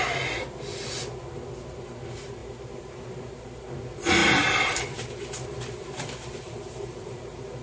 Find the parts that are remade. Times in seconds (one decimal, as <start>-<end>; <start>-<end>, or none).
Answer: 2.4-3.2; 4.2-7.6